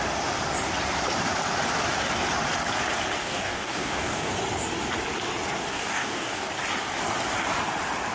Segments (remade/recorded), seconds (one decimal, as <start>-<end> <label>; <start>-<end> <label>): 0.0-3.2 recorded; 3.2-4.3 remade; 4.3-5.7 recorded; 5.7-6.5 remade; 6.5-8.1 recorded